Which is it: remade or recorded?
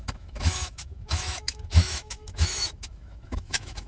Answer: remade